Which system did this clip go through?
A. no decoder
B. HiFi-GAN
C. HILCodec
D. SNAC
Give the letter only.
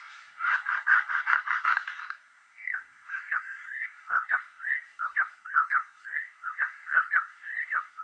D